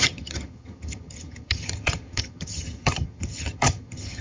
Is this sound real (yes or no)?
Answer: no